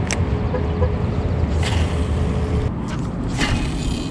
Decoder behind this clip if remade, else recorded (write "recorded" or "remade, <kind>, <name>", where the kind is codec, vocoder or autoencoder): recorded